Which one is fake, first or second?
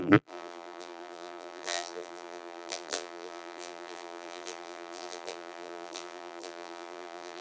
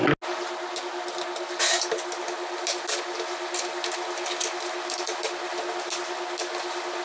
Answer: first